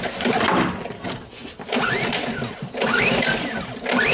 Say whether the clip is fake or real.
real